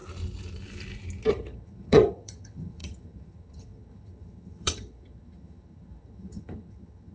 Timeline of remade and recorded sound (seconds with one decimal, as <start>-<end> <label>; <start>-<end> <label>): 0.0-1.3 recorded; 1.3-7.1 remade